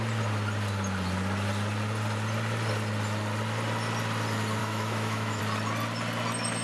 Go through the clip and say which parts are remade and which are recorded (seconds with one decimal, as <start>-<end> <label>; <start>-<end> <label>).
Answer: 0.0-4.6 recorded; 4.6-5.4 remade; 5.4-6.6 recorded